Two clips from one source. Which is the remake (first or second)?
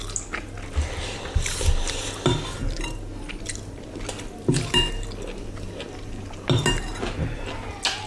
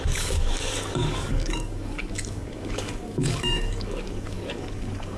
second